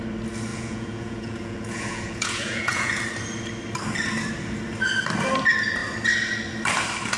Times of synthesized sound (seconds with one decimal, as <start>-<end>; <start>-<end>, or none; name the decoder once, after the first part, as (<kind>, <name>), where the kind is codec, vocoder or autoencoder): 0.5-3.0 (vocoder, Vocos)

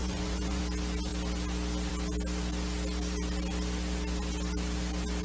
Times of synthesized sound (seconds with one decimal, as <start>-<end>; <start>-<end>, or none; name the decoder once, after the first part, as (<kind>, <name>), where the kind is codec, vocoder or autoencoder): 0.0-0.6 (vocoder, Vocos)